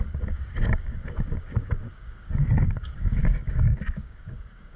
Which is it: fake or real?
fake